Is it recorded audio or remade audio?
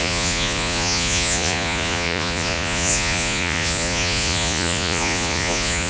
remade